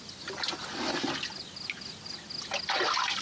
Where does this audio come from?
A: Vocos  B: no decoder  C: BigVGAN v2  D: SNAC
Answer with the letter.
B